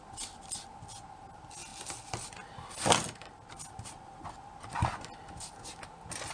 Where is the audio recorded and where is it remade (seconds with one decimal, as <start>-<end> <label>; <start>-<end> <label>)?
0.0-6.3 recorded